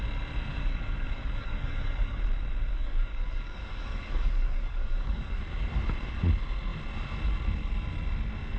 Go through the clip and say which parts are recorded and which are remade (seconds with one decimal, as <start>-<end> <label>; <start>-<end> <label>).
0.0-0.5 recorded; 0.5-2.2 remade; 2.2-2.7 recorded; 2.7-5.4 remade; 5.4-8.6 recorded